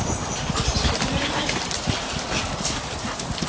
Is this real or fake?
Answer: real